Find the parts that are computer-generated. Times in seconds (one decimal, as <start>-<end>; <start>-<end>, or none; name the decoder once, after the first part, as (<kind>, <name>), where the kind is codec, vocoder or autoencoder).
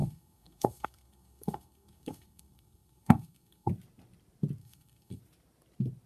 0.0-3.7 (codec, SNAC); 4.6-5.2